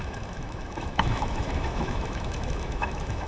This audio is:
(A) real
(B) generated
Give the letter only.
B